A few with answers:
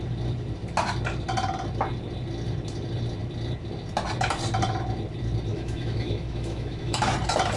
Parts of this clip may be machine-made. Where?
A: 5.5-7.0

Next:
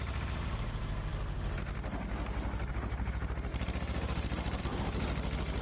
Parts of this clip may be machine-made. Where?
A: none